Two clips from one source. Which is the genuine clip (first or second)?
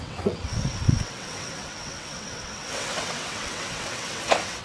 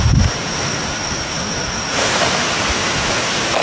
second